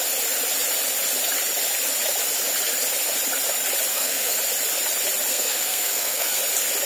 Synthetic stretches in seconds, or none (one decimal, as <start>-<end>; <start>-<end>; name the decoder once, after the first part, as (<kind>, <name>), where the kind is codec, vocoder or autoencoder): 3.9-4.4 (codec, SNAC); 5.3-6.4

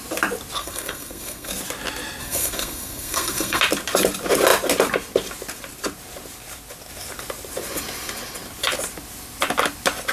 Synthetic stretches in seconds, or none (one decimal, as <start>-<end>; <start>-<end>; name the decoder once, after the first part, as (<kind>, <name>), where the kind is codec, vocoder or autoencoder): 0.6-1.5 (codec, SNAC); 2.2-3.6